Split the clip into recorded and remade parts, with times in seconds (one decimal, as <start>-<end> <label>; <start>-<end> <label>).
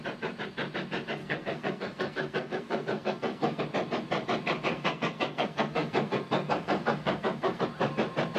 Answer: 0.0-1.2 recorded; 1.2-3.6 remade; 3.6-4.7 recorded; 4.7-7.6 remade; 7.6-8.4 recorded